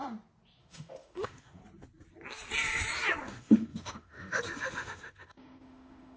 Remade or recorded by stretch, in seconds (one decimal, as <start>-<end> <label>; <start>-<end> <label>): 0.0-0.6 recorded; 0.6-1.6 remade; 1.6-3.2 recorded; 3.2-6.2 remade